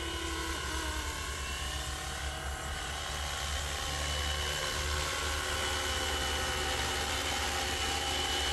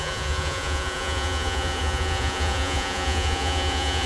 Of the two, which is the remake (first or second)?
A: second